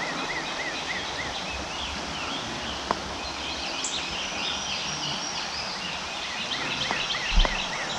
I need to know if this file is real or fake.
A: real